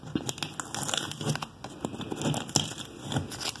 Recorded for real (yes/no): yes